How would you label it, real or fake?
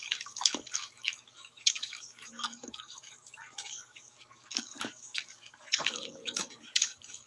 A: fake